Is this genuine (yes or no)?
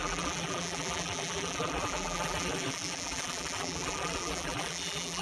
no